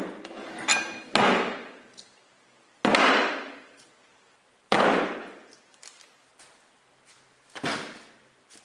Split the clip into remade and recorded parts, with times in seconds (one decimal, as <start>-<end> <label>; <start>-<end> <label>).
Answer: 0.0-8.6 recorded